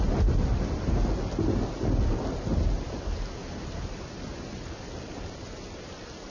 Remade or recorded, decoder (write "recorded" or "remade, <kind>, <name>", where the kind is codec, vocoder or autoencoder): recorded